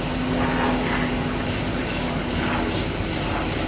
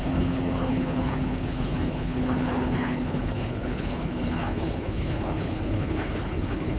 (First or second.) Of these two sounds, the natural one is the first